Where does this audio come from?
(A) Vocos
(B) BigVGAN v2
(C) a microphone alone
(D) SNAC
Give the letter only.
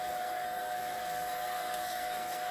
D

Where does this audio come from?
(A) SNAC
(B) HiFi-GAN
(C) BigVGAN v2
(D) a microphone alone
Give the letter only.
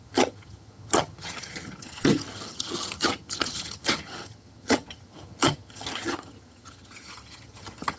B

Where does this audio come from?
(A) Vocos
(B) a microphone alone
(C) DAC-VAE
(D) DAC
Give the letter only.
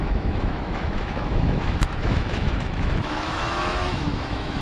C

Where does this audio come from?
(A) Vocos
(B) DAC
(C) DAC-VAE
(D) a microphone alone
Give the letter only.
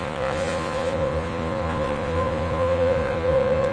A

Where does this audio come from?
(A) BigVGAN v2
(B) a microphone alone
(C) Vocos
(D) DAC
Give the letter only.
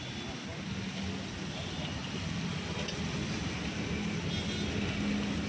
B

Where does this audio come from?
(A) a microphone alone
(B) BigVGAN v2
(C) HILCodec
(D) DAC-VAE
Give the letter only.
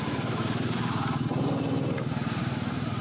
B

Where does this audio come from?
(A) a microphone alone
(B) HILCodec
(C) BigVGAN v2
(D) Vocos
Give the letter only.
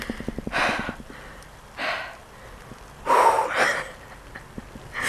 A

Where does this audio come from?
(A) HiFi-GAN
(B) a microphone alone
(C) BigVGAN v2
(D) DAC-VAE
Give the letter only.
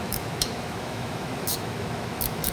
D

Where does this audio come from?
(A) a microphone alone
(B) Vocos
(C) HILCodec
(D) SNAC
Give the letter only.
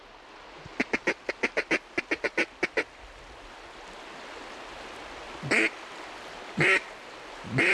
A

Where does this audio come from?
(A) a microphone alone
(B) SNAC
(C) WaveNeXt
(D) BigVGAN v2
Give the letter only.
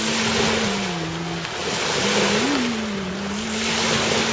A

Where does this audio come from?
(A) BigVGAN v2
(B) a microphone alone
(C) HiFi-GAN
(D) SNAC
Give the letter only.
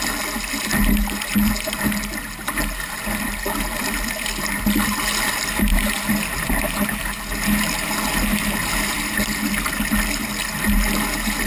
B